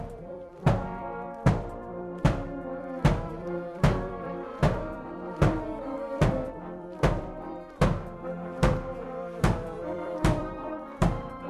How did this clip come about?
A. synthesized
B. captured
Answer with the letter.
A